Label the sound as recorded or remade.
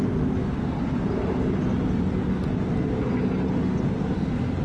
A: recorded